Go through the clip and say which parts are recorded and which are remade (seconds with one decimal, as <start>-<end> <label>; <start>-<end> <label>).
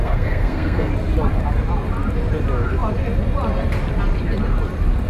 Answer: 0.0-0.9 remade; 0.9-5.1 recorded